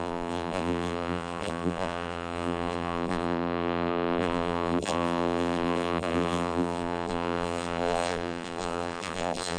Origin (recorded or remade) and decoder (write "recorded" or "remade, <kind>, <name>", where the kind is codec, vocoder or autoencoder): remade, vocoder, BigVGAN v2